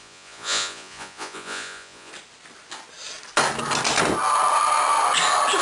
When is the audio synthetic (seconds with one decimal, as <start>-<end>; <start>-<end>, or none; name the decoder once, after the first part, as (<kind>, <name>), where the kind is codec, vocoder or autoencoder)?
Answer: 0.0-2.1 (vocoder, Vocos)